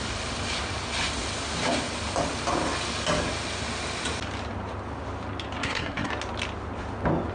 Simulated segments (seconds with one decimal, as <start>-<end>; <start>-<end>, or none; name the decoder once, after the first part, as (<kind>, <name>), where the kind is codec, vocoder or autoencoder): 5.6-6.1 (codec, SNAC)